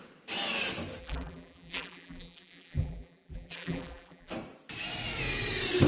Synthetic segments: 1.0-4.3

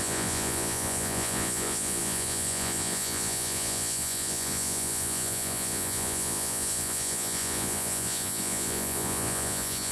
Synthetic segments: 0.0-9.9

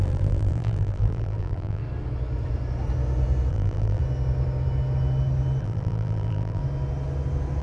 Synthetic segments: 0.0-1.8; 3.5-4.0; 5.6-6.6

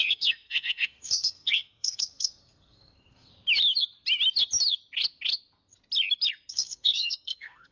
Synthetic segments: 0.0-3.3; 6.5-7.7

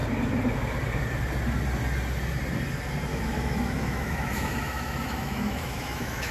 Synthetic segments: 3.1-6.3

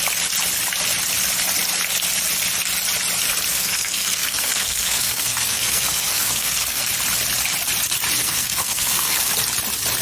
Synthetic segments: 3.5-6.9; 8.2-9.3

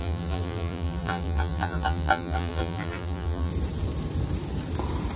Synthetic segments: 0.0-3.5

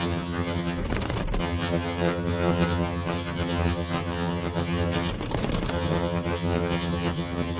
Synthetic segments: 0.0-0.8; 1.4-5.1; 5.7-7.6